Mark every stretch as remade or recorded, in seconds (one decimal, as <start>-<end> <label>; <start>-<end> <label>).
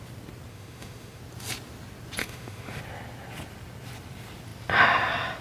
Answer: 0.0-0.5 recorded; 0.5-1.2 remade; 1.2-2.2 recorded; 2.2-2.8 remade; 2.8-5.4 recorded